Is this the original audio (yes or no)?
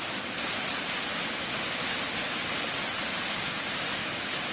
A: yes